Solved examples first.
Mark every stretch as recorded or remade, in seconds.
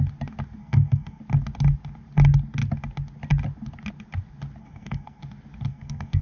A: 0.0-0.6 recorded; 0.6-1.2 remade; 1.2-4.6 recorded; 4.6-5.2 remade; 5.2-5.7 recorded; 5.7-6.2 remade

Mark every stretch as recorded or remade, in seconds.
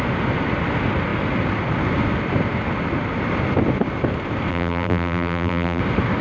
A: 0.0-4.5 recorded; 4.5-5.8 remade; 5.8-6.2 recorded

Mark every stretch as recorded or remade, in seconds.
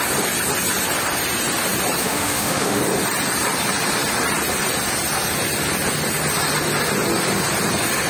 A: 0.0-2.0 recorded; 2.0-2.8 remade; 2.8-8.1 recorded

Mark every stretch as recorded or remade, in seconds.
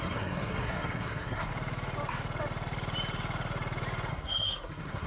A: 0.0-1.5 remade; 1.5-4.1 recorded; 4.1-5.1 remade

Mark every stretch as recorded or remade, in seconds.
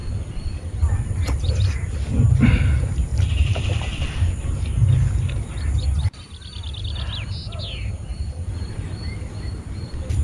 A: 0.0-1.5 remade; 1.5-3.1 recorded; 3.1-4.6 remade; 4.6-8.1 recorded; 8.1-10.2 remade